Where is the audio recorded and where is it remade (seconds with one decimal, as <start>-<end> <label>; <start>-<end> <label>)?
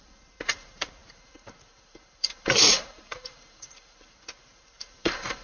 0.0-5.4 remade